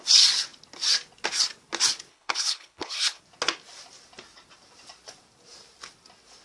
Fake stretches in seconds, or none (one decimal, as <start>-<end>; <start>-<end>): 2.1-3.2